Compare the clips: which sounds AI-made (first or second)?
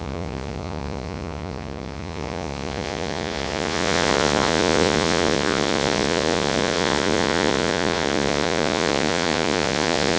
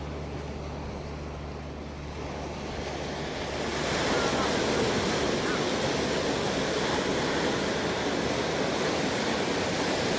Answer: first